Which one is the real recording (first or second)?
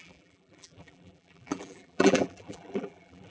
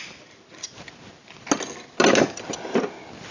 second